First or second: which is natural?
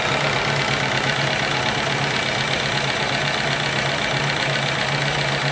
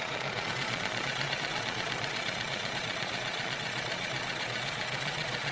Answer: first